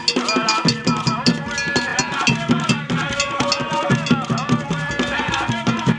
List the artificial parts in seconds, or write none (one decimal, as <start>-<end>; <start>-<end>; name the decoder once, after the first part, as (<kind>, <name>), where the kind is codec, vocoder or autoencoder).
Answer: none